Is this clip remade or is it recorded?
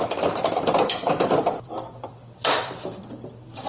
remade